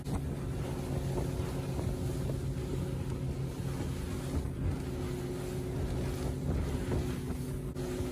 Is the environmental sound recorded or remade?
recorded